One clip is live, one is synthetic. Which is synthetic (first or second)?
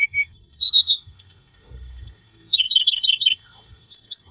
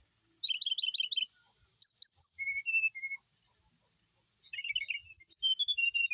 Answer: first